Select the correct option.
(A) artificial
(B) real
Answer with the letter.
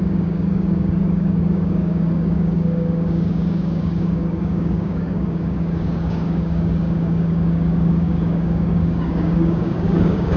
A